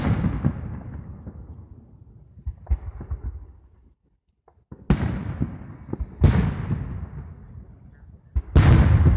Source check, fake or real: real